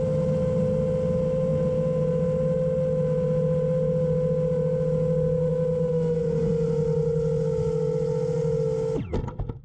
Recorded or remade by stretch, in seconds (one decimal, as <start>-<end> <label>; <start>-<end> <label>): 0.0-9.6 recorded